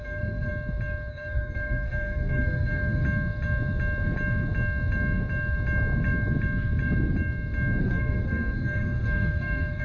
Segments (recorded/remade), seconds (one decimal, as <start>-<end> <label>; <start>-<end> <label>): 0.0-0.5 remade; 0.5-1.1 recorded; 1.1-3.0 remade; 3.0-7.8 recorded; 7.8-9.8 remade